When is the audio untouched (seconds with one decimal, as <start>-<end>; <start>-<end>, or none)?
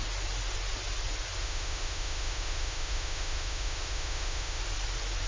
0.0-1.4; 4.6-5.3